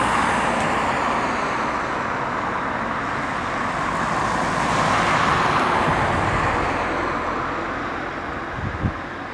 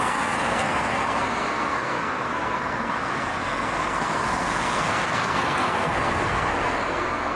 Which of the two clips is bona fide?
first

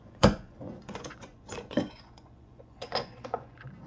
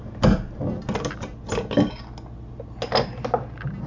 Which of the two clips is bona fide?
second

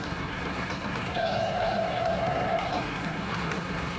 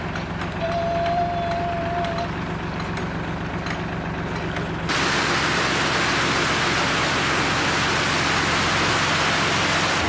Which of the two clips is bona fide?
second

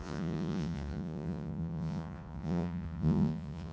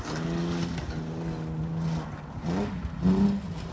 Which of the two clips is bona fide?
second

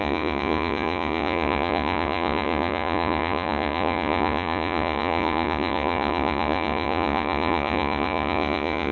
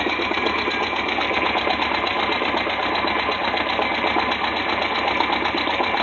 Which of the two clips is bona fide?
second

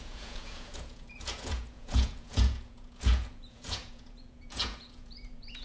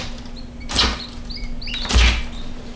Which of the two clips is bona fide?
second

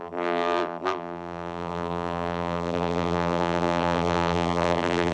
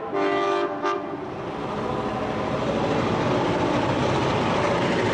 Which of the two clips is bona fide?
second